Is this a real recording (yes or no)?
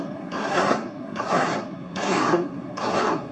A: no